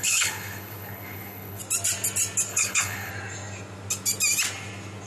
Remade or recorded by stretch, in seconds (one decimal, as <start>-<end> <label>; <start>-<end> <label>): 0.0-1.6 remade; 1.6-2.5 recorded; 2.5-3.1 remade; 3.1-5.1 recorded